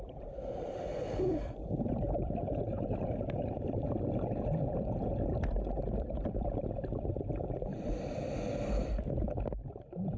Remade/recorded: remade